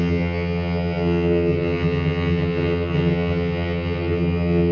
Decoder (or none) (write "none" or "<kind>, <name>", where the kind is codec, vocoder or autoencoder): vocoder, HiFi-GAN